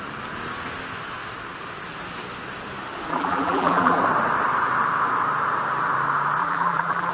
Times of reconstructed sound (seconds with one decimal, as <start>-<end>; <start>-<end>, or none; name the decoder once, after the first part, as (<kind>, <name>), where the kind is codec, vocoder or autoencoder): 3.1-4.0 (vocoder, BigVGAN v2); 6.4-7.1